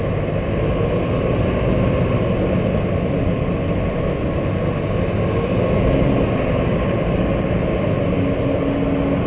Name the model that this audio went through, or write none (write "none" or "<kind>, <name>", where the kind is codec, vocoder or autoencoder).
none